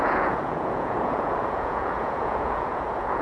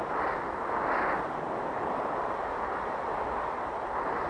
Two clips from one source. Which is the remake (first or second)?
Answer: first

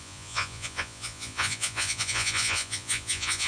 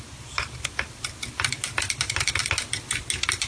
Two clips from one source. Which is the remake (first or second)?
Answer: first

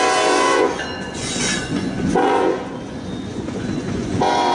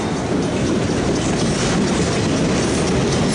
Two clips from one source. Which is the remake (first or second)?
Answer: first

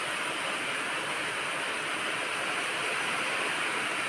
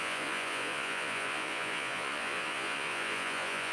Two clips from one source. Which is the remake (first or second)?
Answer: second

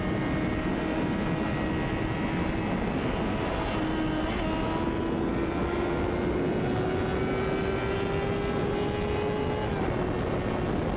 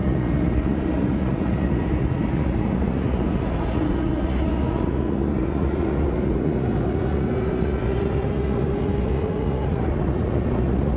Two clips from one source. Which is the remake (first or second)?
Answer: second